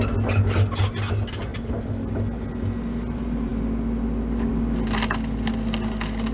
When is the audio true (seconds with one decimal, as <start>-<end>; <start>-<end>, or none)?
0.0-6.3